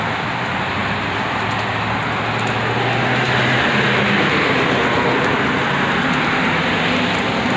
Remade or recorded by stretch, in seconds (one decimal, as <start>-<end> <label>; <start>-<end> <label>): 0.0-0.8 recorded; 0.8-1.6 remade; 1.6-7.6 recorded